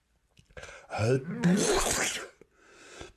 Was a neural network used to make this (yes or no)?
no